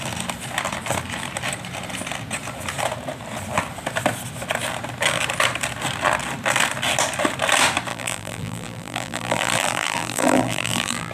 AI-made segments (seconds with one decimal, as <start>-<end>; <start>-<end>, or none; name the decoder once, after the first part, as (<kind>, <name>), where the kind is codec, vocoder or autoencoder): 7.9-11.1 (vocoder, BigVGAN v2)